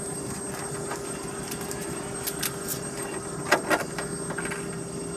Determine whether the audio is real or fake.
real